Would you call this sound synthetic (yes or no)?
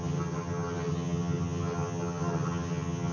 yes